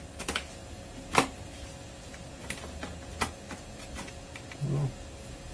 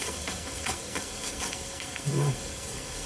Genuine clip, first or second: first